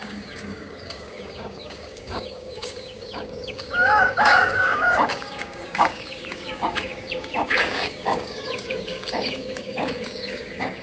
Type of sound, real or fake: fake